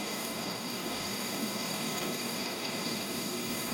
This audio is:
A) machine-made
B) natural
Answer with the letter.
A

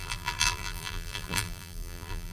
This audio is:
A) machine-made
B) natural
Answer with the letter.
A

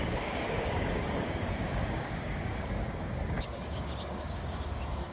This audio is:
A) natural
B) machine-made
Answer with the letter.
B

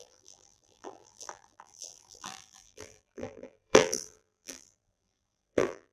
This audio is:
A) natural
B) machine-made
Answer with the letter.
B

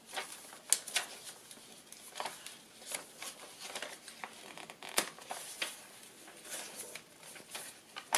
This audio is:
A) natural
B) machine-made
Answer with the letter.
A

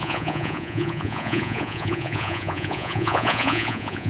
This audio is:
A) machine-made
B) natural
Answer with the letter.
A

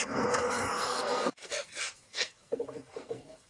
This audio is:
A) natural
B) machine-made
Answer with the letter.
B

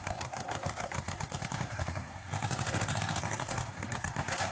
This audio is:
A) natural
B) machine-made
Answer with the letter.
B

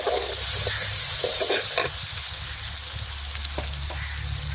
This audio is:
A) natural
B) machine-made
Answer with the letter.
A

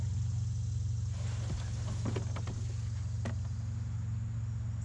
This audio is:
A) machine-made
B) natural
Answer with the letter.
B